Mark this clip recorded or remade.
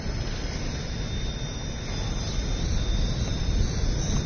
recorded